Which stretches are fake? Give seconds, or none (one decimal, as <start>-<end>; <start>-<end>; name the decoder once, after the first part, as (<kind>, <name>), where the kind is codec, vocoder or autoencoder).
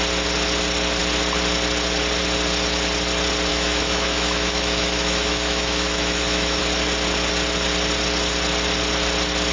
3.5-6.6 (autoencoder, DAC-VAE)